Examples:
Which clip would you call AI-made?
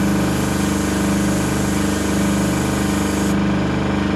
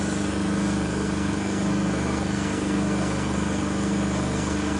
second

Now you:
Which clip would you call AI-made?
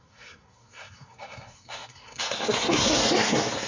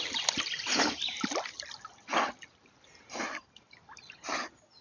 first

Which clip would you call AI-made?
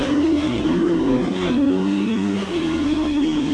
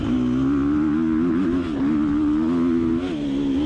first